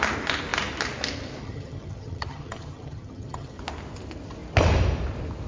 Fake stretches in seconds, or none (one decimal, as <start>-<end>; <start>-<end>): 1.4-3.6